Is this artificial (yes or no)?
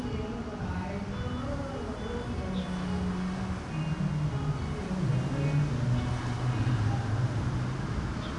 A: no